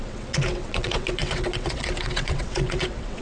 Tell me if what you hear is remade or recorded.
remade